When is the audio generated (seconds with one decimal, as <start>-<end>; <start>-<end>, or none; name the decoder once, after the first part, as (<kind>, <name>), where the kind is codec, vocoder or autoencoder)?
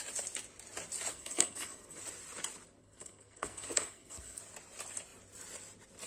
1.1-2.0 (codec, SNAC); 2.8-4.4